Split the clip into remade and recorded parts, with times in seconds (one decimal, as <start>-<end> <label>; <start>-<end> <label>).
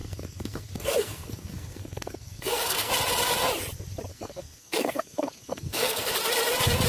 0.0-2.9 remade; 2.9-4.1 recorded; 4.1-6.1 remade; 6.1-6.9 recorded